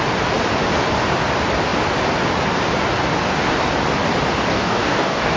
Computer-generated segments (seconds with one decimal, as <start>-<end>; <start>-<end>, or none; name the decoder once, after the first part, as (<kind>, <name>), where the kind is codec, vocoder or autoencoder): 4.5-5.4 (codec, DAC)